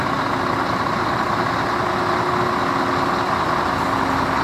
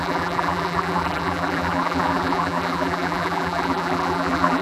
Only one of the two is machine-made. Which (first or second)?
second